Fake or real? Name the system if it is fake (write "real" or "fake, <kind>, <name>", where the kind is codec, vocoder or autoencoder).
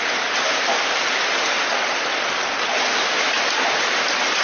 real